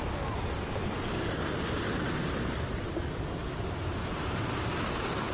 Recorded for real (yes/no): yes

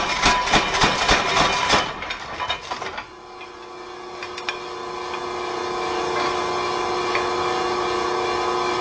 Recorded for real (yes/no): yes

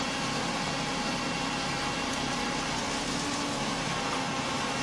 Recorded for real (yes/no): yes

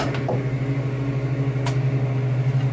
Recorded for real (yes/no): yes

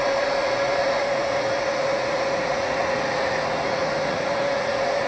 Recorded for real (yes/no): no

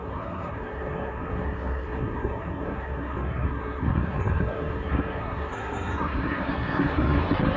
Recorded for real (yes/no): no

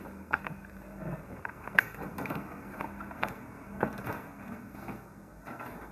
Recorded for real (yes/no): no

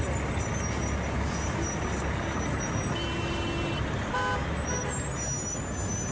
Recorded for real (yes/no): yes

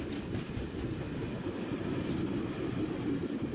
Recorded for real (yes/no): yes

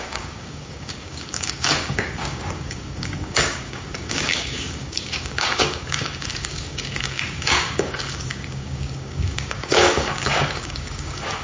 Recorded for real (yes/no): no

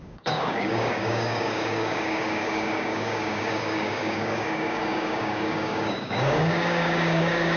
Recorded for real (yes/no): no